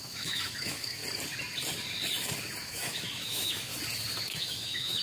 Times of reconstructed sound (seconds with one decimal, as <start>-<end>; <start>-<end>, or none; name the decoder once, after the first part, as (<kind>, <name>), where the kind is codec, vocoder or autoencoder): 0.0-1.0 (autoencoder, DAC-VAE); 2.6-3.7; 4.3-5.0